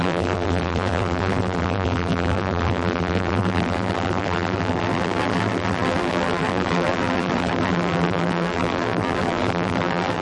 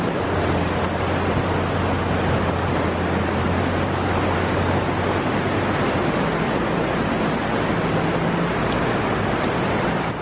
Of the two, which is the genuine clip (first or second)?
second